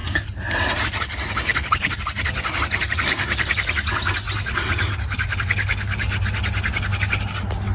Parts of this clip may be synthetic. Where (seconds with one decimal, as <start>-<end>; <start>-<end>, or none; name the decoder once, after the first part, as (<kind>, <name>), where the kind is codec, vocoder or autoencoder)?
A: none